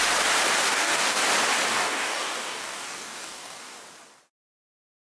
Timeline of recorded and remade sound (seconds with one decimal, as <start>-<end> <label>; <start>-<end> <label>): 0.0-0.7 recorded; 0.7-1.2 remade; 1.2-1.7 recorded; 1.7-3.8 remade; 3.8-5.0 recorded